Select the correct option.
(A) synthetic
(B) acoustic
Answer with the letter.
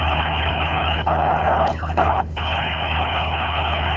A